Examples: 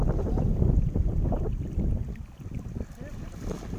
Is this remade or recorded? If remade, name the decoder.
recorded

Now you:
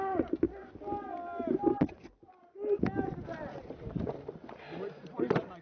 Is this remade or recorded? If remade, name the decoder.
recorded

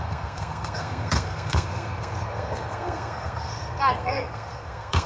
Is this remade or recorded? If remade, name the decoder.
remade, codec, SNAC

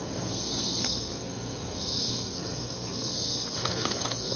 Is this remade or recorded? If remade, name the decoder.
remade, codec, SNAC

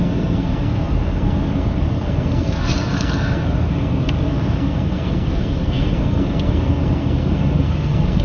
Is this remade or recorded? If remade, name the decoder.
remade, codec, SNAC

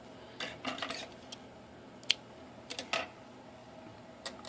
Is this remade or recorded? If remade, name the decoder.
recorded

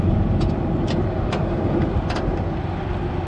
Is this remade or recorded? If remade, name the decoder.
recorded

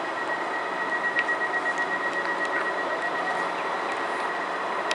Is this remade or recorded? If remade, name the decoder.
recorded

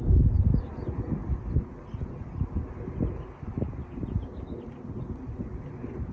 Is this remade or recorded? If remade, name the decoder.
recorded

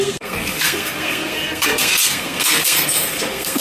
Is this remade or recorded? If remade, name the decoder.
remade, codec, SNAC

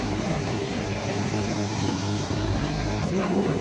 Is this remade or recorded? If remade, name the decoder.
remade, codec, SNAC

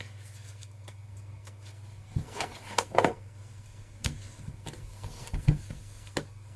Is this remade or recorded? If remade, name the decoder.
remade, codec, SNAC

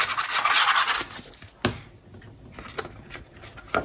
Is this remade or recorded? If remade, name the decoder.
recorded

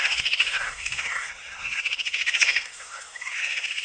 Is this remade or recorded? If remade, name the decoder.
remade, codec, SNAC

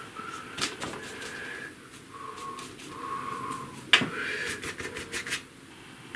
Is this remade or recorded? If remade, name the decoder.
recorded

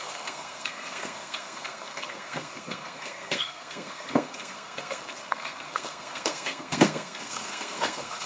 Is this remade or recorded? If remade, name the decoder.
remade, codec, SNAC